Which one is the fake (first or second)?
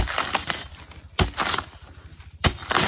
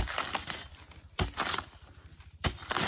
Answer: second